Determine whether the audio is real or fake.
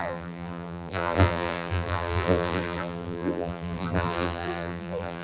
fake